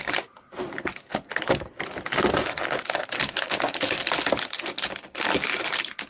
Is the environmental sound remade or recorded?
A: recorded